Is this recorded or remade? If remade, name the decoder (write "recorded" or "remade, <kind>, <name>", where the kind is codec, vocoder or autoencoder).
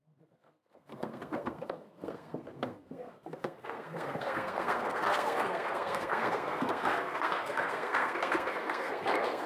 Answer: remade, codec, SNAC